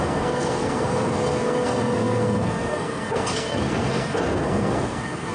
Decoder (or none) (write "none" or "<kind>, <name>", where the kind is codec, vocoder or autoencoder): codec, SNAC